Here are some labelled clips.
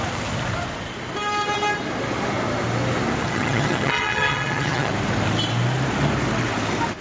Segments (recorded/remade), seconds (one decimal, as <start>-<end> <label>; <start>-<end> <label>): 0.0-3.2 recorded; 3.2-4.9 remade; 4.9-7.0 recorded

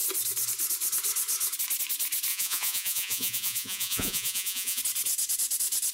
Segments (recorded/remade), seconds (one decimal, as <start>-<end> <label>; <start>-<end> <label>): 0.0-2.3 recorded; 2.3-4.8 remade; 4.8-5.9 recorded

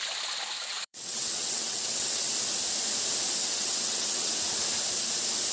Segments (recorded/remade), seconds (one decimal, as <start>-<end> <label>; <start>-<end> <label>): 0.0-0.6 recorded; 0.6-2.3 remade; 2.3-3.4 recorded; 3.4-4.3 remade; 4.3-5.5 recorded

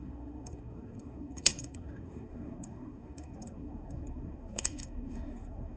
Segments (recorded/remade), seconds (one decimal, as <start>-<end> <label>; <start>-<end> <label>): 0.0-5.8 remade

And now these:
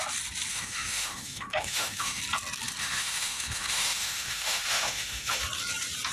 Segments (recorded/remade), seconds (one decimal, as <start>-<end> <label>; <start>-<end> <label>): 0.0-0.5 recorded; 0.5-2.2 remade; 2.2-2.8 recorded; 2.8-5.4 remade; 5.4-6.1 recorded

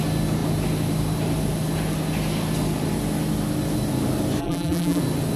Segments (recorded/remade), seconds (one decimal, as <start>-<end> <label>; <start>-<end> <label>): 0.0-4.4 recorded; 4.4-5.0 remade; 5.0-5.4 recorded

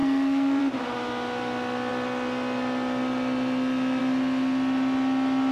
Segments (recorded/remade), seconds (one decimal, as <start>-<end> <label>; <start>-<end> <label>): 0.0-0.6 remade; 0.6-5.5 recorded

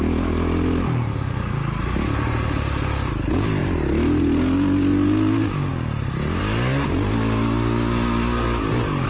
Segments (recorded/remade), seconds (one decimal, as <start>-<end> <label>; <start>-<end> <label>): 0.0-9.1 recorded